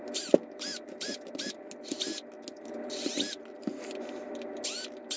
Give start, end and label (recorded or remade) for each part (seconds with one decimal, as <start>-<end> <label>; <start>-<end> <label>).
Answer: 0.0-5.2 recorded